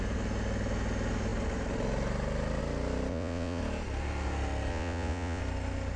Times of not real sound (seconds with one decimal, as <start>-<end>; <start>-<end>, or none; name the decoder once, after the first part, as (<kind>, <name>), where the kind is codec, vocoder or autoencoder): 3.1-3.6 (vocoder, Vocos); 4.7-5.4